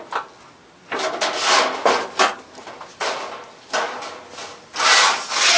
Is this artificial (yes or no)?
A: no